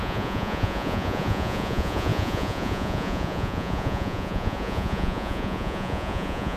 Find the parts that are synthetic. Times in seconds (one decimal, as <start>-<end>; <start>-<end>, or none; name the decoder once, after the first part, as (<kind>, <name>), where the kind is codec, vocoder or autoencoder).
0.0-6.6 (vocoder, Vocos)